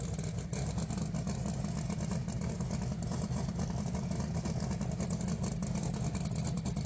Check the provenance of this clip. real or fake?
real